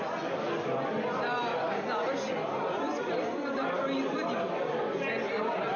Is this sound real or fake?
real